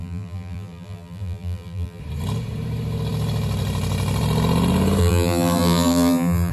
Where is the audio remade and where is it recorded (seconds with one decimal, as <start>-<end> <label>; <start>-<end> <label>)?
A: 0.0-2.0 remade; 2.0-5.0 recorded; 5.0-6.5 remade